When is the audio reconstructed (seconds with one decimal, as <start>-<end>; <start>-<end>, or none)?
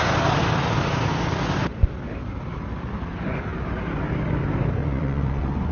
4.8-5.7